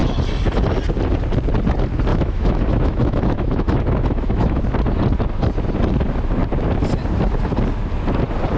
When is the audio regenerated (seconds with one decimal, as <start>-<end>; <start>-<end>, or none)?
2.1-4.6